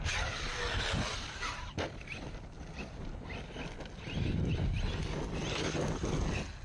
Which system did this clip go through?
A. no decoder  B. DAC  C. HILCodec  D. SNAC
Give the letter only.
A